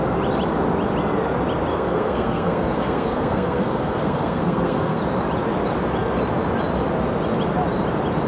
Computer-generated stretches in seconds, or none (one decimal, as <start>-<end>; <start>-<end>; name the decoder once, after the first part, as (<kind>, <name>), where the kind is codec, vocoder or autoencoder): 1.7-5.0 (codec, SNAC)